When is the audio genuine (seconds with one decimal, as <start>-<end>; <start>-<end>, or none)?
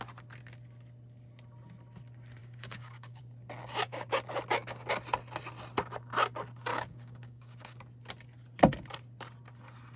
0.0-2.4; 3.2-3.6; 4.1-6.7; 7.8-10.0